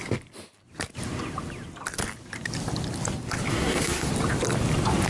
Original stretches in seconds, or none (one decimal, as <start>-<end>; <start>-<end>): 0.0-3.5; 4.1-5.1